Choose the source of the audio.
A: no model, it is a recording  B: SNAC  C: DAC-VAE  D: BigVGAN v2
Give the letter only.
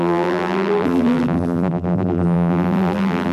D